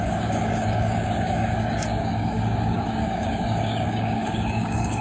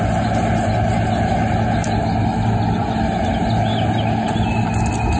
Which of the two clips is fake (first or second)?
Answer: first